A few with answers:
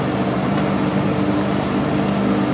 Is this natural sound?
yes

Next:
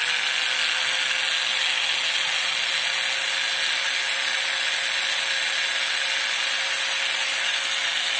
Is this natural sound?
yes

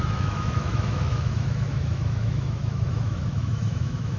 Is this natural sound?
no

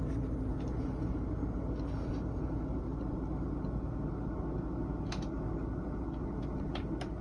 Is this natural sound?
yes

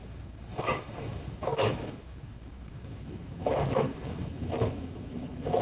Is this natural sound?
no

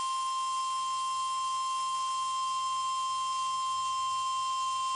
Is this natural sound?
no